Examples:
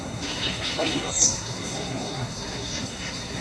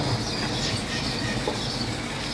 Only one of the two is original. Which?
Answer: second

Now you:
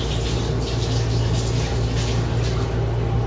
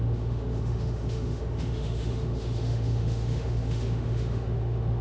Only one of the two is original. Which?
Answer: first